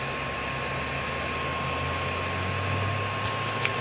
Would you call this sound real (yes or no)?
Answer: yes